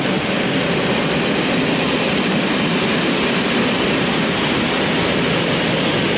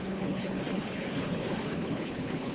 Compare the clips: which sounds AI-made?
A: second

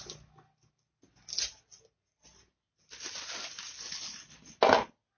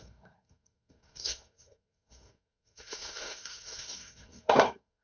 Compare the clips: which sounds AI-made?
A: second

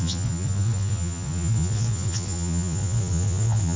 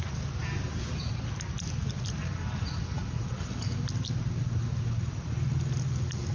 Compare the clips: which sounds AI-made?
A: first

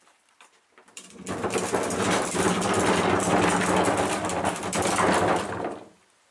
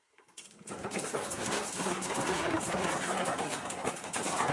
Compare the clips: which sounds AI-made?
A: second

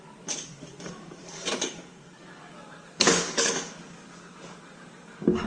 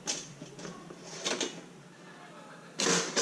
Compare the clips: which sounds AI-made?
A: first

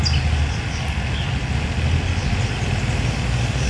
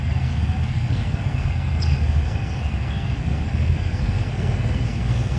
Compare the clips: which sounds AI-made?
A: second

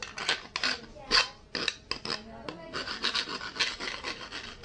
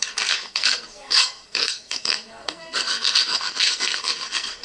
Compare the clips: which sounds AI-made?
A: second